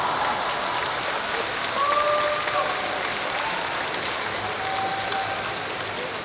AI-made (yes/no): no